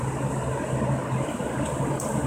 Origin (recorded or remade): recorded